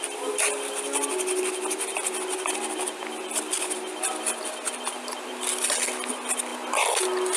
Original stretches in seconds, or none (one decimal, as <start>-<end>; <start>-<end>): 0.0-7.4